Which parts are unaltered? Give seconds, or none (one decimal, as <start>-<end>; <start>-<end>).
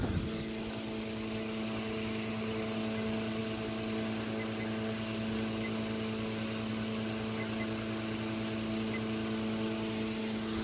0.0-10.6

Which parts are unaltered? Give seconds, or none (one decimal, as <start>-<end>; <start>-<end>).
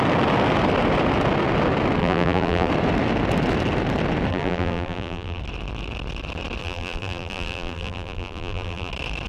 0.0-2.0; 2.7-4.3; 5.4-6.6; 8.9-9.3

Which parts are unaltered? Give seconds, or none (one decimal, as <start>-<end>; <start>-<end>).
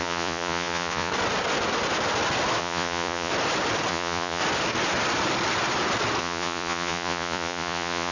1.1-2.6; 3.3-3.9; 4.4-6.2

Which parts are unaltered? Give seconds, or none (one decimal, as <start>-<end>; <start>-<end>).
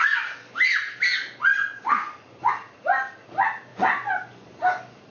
0.0-1.5; 2.5-3.7; 4.6-5.1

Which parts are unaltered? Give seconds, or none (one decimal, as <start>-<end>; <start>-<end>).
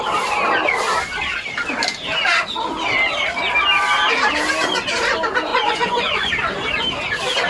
0.0-5.5; 6.3-7.5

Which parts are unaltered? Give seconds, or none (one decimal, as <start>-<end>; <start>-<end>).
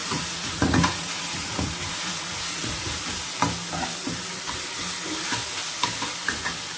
2.9-6.8